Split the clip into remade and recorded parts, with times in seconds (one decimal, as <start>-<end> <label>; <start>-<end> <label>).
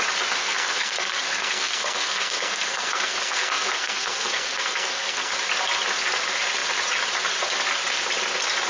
0.0-0.4 recorded; 0.4-5.3 remade; 5.3-8.7 recorded